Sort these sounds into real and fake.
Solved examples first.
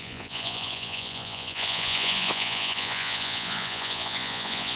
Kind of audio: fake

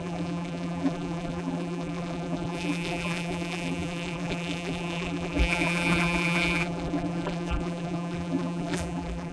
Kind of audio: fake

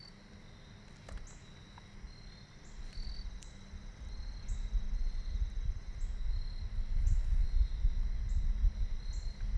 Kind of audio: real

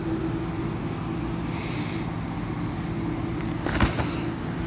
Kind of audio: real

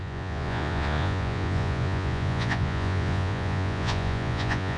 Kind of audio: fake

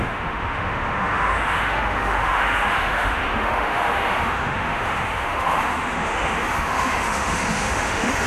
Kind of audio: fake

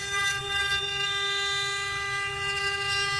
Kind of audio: real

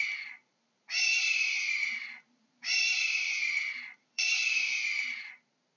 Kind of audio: fake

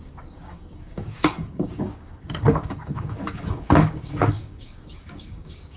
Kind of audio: fake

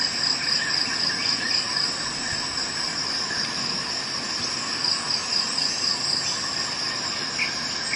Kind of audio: real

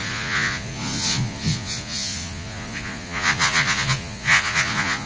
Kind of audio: fake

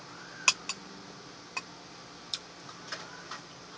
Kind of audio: real